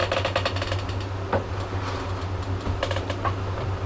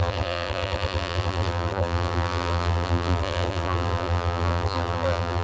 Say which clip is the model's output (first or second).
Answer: second